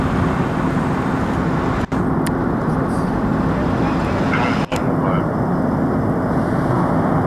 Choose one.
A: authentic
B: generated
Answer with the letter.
A